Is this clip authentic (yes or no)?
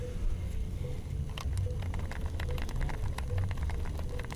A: yes